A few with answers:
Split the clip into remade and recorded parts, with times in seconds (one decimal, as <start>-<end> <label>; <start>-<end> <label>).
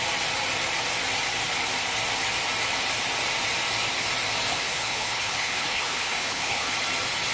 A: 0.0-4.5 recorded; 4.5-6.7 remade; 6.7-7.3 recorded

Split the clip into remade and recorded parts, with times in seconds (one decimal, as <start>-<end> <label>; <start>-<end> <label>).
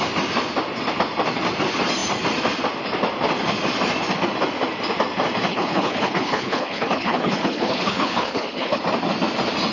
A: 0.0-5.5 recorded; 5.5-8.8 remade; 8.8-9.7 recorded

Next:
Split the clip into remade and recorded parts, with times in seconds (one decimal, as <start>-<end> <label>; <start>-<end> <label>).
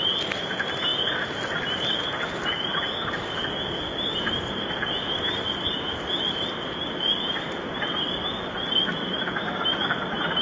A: 0.0-10.4 recorded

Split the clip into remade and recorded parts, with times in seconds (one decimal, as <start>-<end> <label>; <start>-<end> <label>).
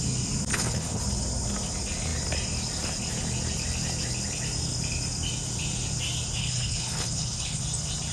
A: 0.0-0.5 recorded; 0.5-1.0 remade; 1.0-6.4 recorded; 6.4-7.6 remade; 7.6-8.1 recorded